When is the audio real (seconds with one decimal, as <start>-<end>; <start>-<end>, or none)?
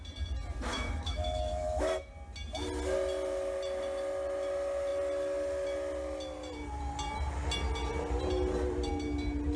0.0-0.7; 2.1-9.6